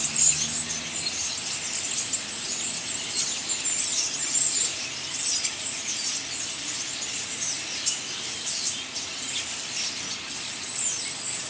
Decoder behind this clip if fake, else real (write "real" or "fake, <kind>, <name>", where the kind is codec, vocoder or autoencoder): real